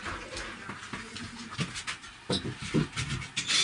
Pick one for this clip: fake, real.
real